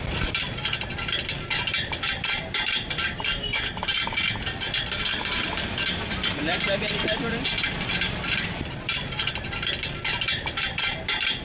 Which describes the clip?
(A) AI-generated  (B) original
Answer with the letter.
A